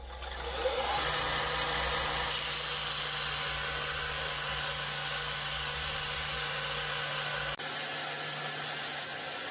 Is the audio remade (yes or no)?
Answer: no